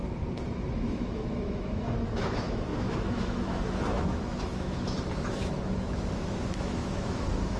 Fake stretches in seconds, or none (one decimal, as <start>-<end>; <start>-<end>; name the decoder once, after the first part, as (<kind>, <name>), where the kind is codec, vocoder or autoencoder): 0.7-7.6 (autoencoder, DAC-VAE)